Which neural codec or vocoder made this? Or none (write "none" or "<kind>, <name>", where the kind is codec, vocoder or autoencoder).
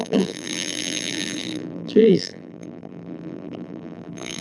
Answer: vocoder, BigVGAN v2